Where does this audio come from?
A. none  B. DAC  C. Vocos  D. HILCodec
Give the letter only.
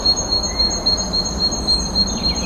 A